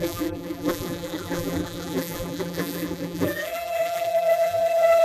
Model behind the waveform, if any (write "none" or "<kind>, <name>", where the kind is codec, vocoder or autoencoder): vocoder, BigVGAN v2